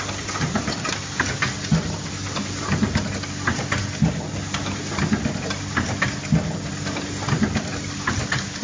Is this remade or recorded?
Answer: recorded